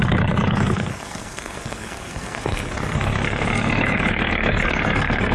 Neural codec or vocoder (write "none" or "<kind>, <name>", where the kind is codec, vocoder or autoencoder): codec, SNAC